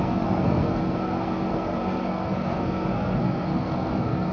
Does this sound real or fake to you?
fake